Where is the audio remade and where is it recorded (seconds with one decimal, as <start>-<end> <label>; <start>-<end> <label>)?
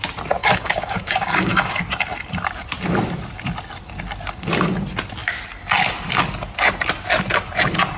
0.0-0.4 recorded; 0.4-1.8 remade; 1.8-8.0 recorded